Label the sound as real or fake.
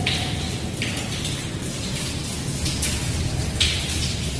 real